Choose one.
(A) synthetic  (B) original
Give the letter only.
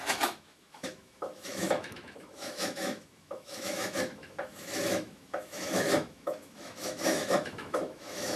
A